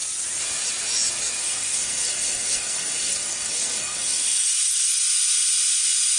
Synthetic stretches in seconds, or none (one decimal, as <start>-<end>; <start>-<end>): 1.4-5.0